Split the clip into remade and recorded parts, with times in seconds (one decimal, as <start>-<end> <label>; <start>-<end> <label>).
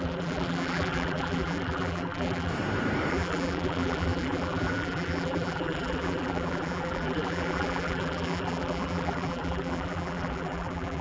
0.0-2.5 remade; 2.5-3.1 recorded; 3.1-11.0 remade